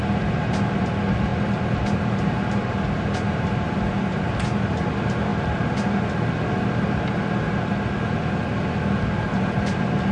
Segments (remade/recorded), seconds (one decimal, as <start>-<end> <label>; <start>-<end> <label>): 0.0-10.1 recorded